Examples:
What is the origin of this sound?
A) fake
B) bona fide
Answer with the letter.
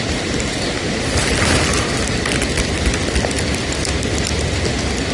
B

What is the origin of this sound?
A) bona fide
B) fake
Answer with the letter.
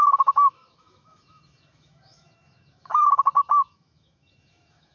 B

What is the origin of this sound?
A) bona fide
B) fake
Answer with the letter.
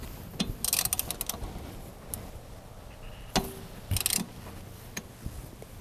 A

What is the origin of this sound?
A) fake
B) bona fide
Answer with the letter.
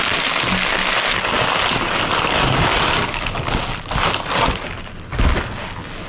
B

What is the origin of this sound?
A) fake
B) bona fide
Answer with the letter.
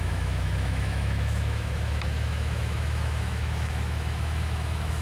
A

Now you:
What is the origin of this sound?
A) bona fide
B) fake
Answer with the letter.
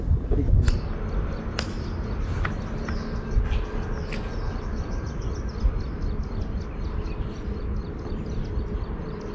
A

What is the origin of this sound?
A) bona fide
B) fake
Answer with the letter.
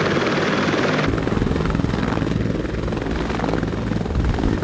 A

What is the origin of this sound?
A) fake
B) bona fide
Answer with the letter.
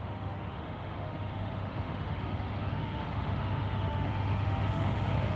A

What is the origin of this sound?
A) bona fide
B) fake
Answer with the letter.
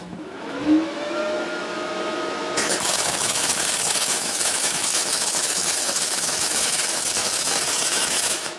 B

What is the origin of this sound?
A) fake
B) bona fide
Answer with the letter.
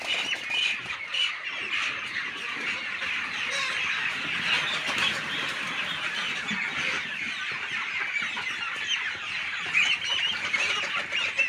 B